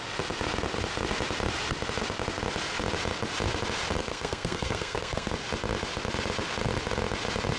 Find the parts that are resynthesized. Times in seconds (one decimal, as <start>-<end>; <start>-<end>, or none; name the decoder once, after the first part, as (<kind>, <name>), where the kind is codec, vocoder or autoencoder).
4.0-5.3 (codec, SNAC)